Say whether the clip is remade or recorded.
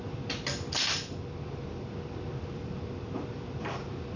recorded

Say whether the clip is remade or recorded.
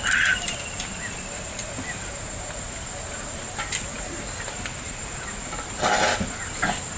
recorded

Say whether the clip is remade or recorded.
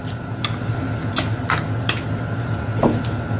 recorded